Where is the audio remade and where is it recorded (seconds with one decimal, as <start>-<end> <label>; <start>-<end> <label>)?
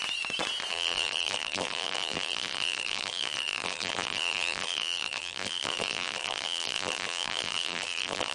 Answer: 0.0-0.7 recorded; 0.7-8.3 remade